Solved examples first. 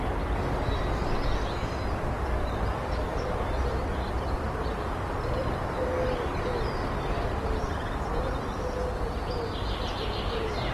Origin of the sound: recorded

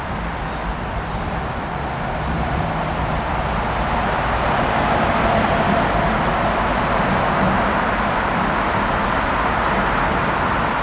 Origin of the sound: recorded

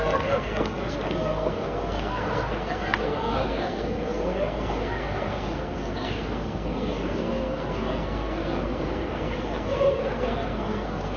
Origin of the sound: remade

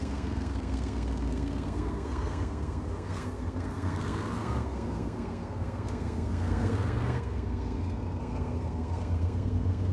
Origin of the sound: remade